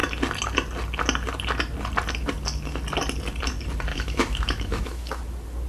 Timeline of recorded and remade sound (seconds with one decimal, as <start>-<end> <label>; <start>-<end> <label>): 0.0-3.9 recorded; 3.9-5.2 remade; 5.2-5.7 recorded